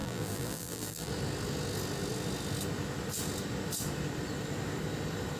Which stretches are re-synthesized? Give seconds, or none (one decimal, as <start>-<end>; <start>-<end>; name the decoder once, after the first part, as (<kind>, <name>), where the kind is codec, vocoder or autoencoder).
0.0-1.1 (vocoder, BigVGAN v2)